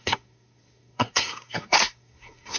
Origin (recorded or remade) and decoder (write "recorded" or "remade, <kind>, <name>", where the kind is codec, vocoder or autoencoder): remade, codec, SNAC